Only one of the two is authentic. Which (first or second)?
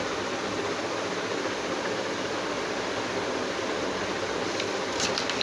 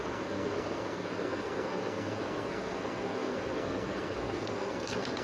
first